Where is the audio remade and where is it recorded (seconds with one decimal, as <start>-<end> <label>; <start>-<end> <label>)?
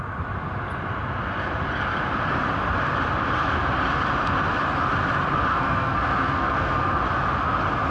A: 0.0-5.5 recorded; 5.5-7.0 remade; 7.0-7.9 recorded